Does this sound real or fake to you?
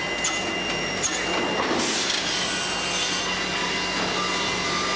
real